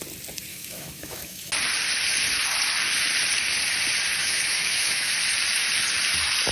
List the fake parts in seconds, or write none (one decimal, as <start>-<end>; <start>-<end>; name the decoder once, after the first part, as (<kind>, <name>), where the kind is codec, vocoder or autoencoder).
0.5-1.5 (autoencoder, DAC-VAE); 4.2-5.1